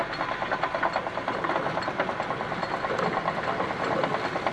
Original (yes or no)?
yes